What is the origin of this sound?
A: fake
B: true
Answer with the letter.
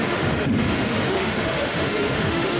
A